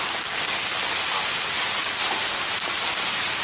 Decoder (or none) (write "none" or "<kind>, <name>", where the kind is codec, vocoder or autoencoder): none